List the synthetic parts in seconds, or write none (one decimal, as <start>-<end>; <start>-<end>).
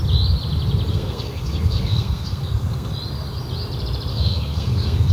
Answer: 0.9-2.9; 4.1-5.1